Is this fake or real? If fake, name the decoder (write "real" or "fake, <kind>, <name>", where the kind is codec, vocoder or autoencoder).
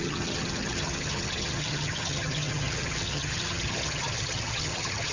fake, vocoder, HiFi-GAN